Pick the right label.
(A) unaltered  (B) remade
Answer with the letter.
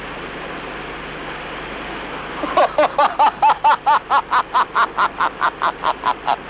A